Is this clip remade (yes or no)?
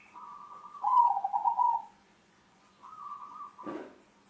yes